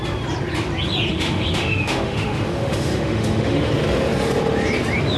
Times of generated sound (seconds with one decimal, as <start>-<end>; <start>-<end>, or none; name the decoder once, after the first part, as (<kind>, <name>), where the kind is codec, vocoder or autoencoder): 1.1-3.7 (autoencoder, DAC-VAE)